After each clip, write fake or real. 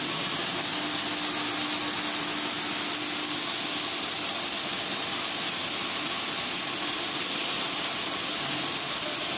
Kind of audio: real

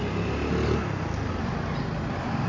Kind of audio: real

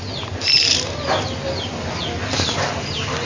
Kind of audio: real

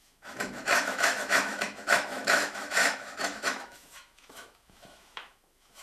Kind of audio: fake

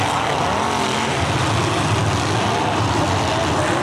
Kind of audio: real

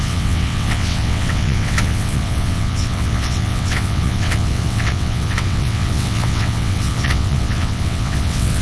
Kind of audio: fake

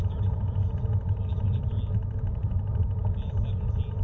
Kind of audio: real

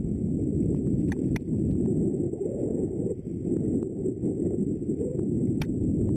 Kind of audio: fake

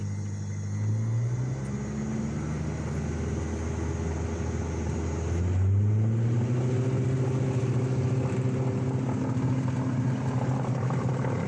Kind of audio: real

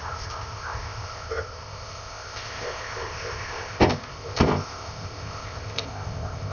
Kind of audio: fake